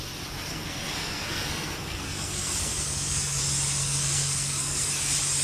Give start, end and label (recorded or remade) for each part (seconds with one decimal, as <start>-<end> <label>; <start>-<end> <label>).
0.0-0.5 recorded; 0.5-3.4 remade; 3.4-3.8 recorded; 3.8-4.9 remade; 4.9-5.4 recorded